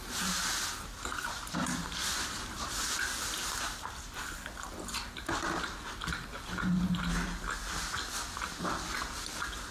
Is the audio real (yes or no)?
yes